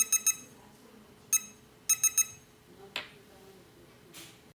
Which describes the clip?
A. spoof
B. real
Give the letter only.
B